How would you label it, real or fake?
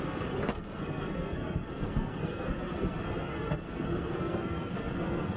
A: fake